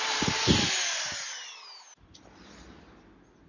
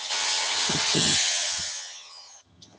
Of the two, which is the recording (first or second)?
first